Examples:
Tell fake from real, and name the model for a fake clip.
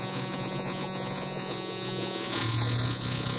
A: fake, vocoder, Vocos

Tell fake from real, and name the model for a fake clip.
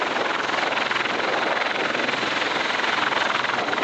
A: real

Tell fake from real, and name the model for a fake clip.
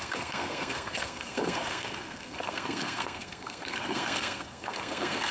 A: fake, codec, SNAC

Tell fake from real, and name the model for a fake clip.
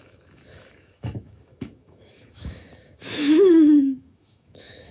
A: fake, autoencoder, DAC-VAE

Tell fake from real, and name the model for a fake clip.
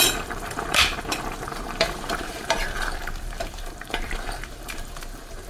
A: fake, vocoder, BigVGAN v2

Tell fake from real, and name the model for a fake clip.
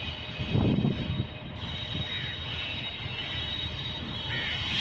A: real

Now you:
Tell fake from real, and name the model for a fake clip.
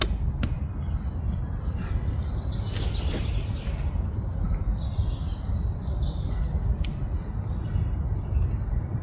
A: real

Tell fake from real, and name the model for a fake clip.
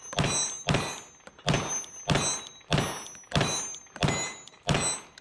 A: real